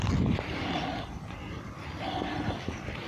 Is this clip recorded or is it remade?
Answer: recorded